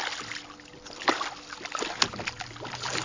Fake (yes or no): no